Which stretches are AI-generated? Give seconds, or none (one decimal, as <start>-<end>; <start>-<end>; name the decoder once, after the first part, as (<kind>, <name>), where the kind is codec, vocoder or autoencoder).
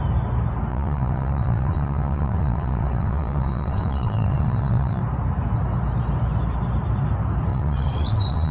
0.7-5.0 (vocoder, WaveNeXt); 7.5-8.5